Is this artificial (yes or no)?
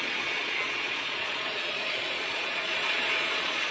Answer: yes